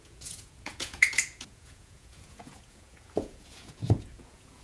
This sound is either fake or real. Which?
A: fake